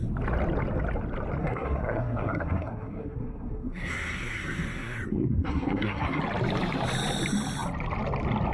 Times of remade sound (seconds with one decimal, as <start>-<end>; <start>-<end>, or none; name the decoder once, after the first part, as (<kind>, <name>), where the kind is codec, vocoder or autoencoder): 1.4-6.2 (codec, SNAC)